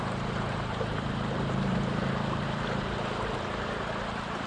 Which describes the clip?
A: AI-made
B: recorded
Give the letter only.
A